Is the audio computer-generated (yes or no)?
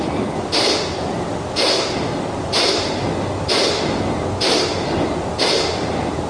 no